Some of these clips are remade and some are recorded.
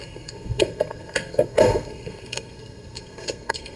remade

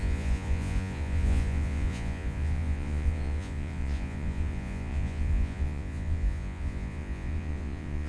remade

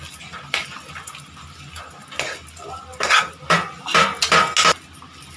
recorded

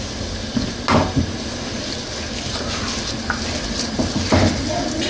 recorded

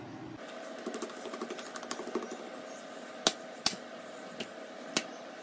recorded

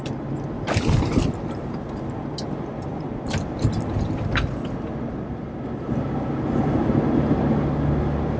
recorded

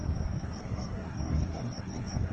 remade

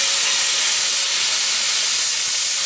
recorded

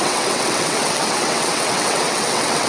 remade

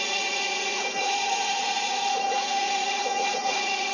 remade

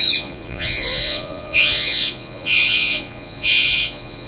remade